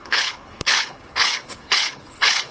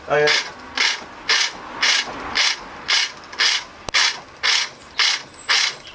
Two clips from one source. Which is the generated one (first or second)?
first